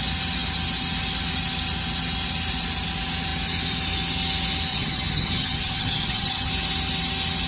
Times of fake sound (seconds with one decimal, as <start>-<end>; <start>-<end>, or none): 4.7-6.5